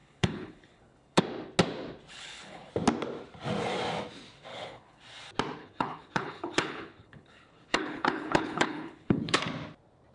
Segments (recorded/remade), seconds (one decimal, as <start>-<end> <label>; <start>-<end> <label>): 0.0-1.2 remade; 1.2-2.1 recorded; 2.1-2.7 remade; 2.7-4.5 recorded; 4.5-5.0 remade; 5.0-5.6 recorded; 5.6-9.4 remade; 9.4-10.1 recorded